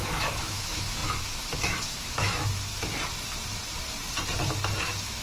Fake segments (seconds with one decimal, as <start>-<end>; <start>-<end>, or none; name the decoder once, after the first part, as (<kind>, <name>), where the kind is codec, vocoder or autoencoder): 0.0-2.7 (autoencoder, DAC-VAE); 4.8-5.2